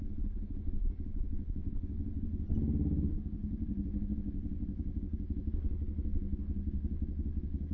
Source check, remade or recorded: recorded